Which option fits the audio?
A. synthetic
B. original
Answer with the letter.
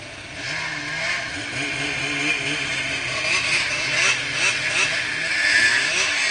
B